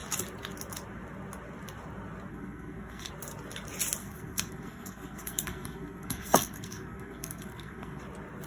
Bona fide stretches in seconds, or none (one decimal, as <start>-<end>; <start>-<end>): 0.0-2.3; 3.1-4.0; 8.0-8.5